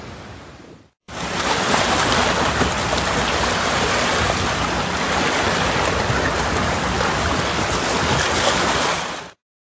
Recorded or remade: recorded